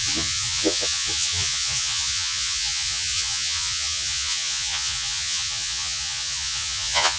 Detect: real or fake fake